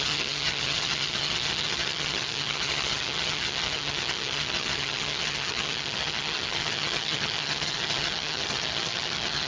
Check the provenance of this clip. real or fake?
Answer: fake